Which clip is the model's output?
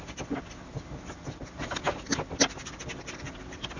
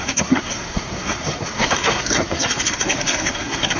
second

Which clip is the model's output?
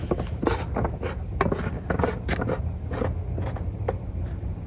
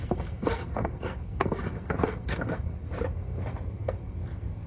second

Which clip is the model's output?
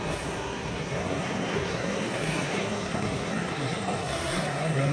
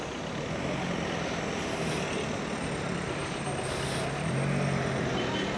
first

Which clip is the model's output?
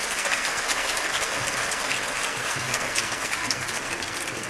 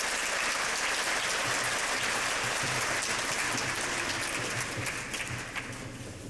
first